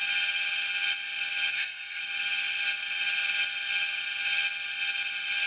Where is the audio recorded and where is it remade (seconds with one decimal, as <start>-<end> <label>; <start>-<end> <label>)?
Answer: 0.0-1.5 recorded; 1.5-2.0 remade; 2.0-5.5 recorded